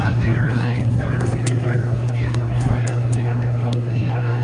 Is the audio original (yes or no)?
no